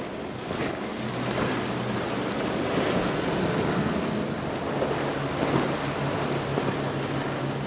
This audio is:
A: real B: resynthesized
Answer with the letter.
A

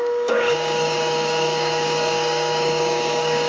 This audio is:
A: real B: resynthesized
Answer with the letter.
B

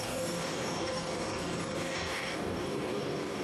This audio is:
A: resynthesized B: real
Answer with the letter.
A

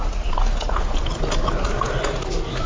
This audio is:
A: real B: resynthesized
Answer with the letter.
A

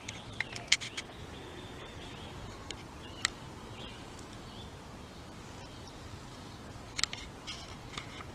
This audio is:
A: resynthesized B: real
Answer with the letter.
B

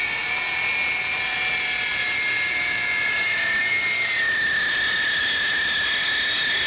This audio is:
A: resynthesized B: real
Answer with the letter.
B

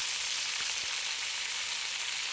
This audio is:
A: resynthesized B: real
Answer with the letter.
B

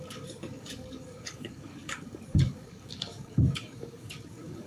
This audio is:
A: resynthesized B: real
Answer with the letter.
A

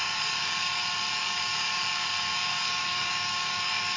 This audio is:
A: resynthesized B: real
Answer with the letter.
A